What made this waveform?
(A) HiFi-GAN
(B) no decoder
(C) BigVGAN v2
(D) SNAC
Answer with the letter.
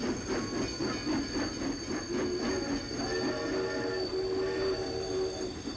B